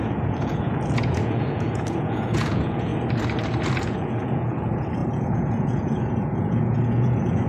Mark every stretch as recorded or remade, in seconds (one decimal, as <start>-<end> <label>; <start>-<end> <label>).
0.0-2.9 remade; 2.9-3.8 recorded; 3.8-7.5 remade